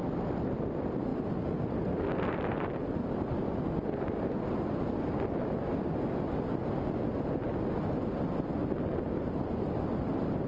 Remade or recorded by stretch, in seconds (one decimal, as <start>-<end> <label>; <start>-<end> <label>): 0.0-10.5 recorded